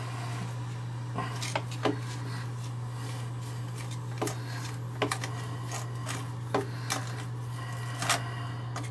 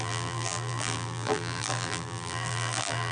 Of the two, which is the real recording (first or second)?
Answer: first